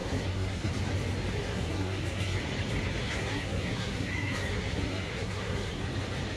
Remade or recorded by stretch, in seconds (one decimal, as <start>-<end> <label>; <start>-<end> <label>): 0.0-0.7 remade; 0.7-1.3 recorded; 1.3-2.4 remade; 2.4-3.0 recorded; 3.0-5.8 remade; 5.8-6.4 recorded